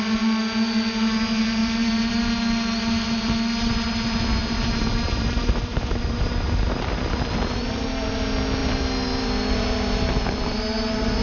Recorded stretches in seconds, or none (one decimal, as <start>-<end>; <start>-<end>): 0.0-1.6; 2.1-4.4; 8.2-8.6